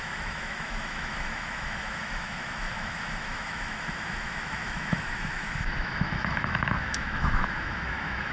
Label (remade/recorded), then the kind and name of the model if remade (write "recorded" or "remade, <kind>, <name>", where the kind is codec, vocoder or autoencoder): remade, autoencoder, DAC-VAE